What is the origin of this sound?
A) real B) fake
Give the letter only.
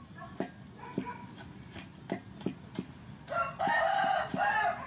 A